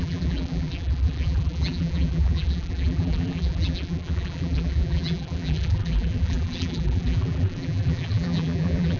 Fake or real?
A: fake